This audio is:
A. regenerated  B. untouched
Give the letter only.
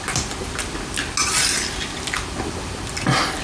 B